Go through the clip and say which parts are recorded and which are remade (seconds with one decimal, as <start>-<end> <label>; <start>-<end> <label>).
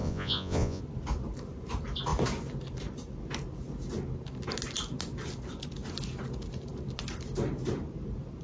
0.0-0.8 remade; 0.8-8.4 recorded